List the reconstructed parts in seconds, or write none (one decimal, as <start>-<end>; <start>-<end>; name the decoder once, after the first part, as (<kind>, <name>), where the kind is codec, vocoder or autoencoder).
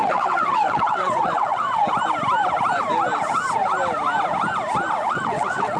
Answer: 0.0-1.8 (vocoder, WaveNeXt); 5.1-5.8